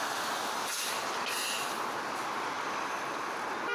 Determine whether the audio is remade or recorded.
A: recorded